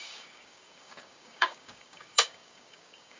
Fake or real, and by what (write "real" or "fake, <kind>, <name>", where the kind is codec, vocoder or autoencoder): fake, codec, DAC